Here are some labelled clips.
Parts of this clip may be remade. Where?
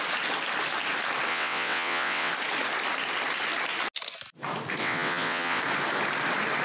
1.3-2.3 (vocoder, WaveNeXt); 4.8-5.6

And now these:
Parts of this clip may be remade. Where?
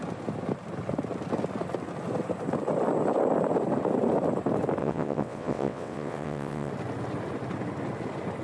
4.8-6.7 (vocoder, WaveNeXt)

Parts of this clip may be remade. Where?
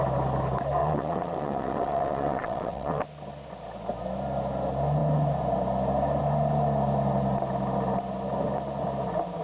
0.8-3.0 (vocoder, WaveNeXt)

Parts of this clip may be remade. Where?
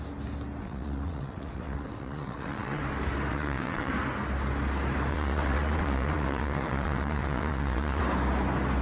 0.6-2.8 (vocoder, WaveNeXt); 3.3-3.9; 5.1-8.0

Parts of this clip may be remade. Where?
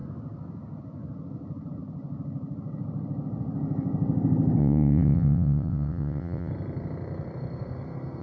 4.6-6.5 (vocoder, WaveNeXt)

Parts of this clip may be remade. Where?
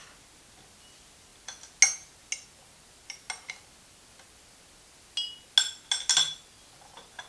none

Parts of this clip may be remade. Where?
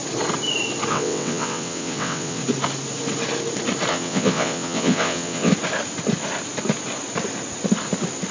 0.9-2.4 (vocoder, WaveNeXt); 3.9-5.5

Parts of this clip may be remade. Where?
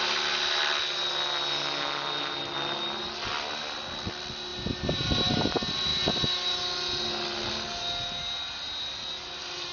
none